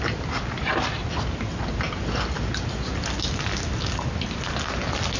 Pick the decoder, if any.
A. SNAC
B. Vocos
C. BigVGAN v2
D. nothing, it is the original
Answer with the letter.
D